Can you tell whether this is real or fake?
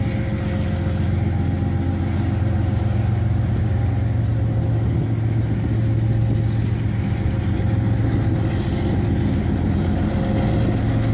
real